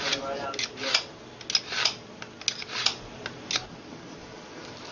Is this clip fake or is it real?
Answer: real